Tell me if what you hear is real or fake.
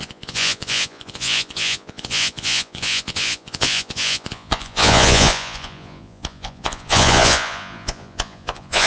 fake